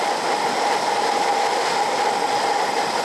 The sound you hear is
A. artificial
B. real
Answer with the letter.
B